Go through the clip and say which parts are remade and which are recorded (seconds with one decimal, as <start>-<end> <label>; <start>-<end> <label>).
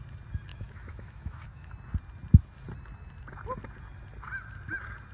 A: 0.0-0.5 recorded; 0.5-1.7 remade; 1.7-5.1 recorded